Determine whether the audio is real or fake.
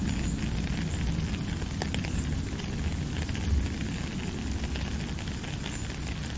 real